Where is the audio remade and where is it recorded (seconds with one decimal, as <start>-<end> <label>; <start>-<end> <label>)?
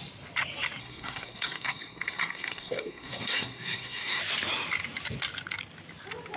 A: 0.0-0.8 recorded; 0.8-4.2 remade; 4.2-6.4 recorded